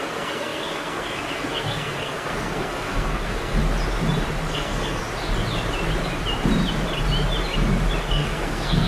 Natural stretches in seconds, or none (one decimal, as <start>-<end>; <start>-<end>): 3.6-4.5; 5.0-8.0

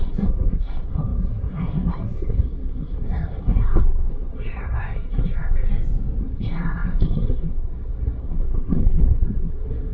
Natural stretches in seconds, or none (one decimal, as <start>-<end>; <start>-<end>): 5.7-6.2

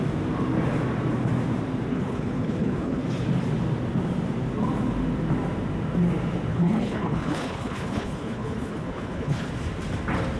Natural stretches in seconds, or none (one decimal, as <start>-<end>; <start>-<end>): 0.0-1.9; 3.0-6.5; 9.5-10.4

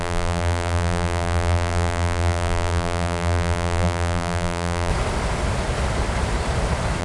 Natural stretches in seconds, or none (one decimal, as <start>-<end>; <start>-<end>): 4.9-7.0

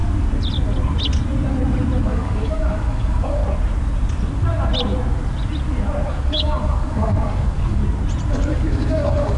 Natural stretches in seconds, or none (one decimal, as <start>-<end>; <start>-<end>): 0.0-2.0; 3.4-6.1; 7.8-8.3

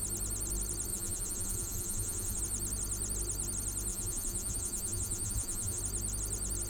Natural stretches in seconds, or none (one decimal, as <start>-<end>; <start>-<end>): 0.0-0.9; 2.4-3.9; 5.8-6.7